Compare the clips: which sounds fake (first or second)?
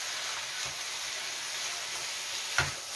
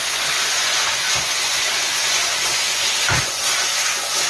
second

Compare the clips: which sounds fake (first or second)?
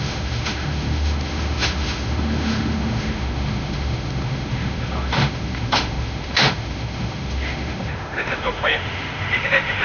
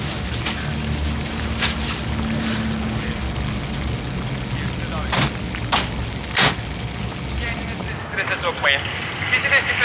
first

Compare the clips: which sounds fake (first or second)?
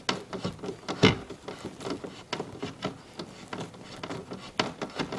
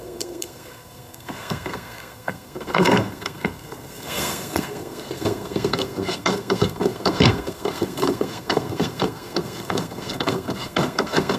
second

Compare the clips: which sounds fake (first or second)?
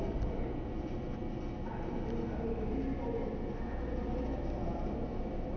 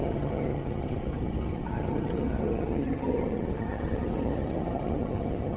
second